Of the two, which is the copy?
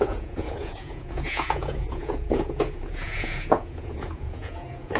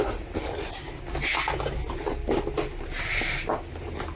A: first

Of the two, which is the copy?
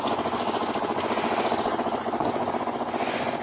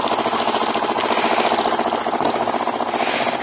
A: first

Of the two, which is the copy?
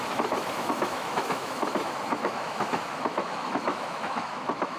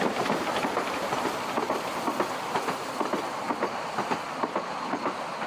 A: first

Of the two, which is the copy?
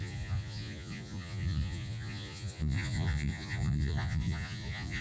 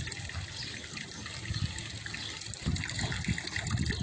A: first